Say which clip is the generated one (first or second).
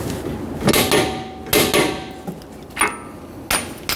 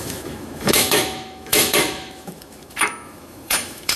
second